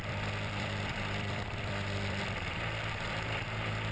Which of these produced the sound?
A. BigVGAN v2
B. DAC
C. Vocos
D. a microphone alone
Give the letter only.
A